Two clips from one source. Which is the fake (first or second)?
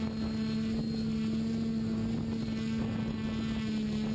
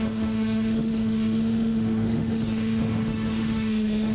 second